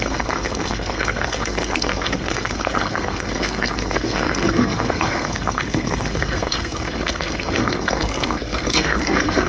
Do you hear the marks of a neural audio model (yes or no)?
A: yes